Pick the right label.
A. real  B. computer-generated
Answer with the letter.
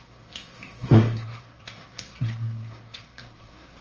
B